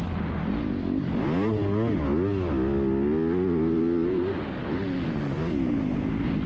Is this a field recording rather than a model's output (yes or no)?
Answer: yes